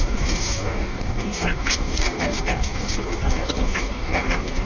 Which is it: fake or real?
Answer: fake